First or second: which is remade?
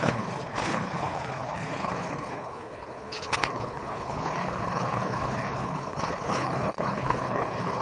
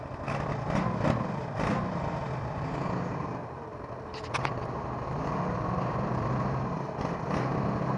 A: first